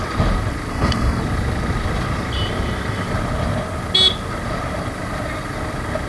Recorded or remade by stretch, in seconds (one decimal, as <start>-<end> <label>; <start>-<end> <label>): 0.0-0.7 recorded; 0.7-1.2 remade; 1.2-6.1 recorded